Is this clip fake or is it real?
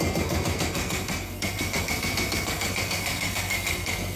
fake